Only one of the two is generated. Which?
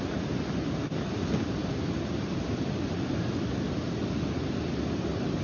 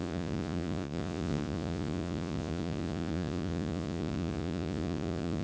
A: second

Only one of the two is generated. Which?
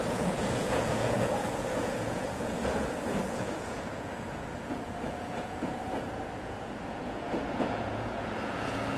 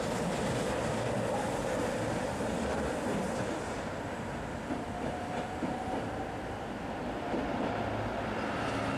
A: first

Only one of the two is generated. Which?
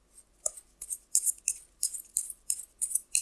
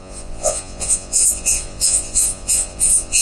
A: second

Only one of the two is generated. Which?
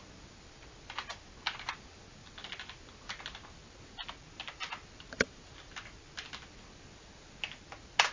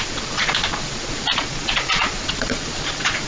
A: second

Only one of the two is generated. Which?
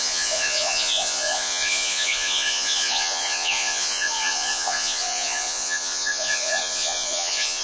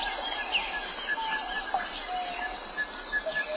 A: first